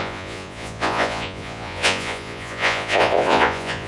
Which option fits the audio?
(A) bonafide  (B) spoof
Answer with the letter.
B